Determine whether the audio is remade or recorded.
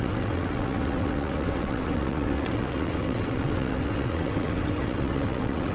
remade